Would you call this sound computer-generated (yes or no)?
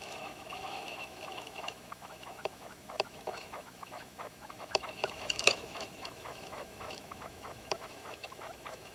yes